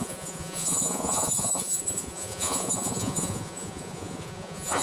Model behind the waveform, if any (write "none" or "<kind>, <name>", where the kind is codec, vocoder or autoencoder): vocoder, Vocos